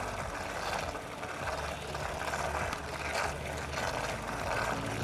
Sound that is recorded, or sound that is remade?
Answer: recorded